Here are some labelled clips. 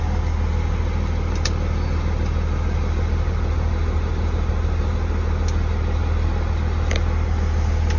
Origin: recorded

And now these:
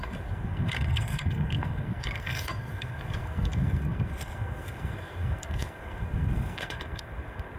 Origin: remade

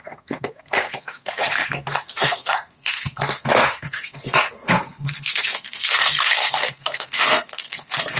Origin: remade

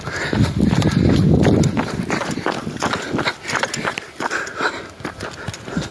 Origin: recorded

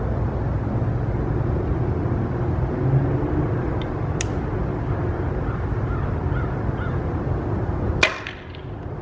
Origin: recorded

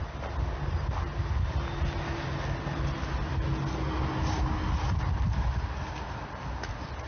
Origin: recorded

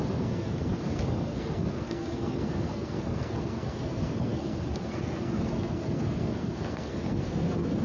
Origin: remade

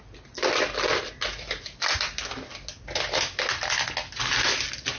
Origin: recorded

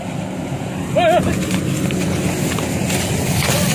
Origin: recorded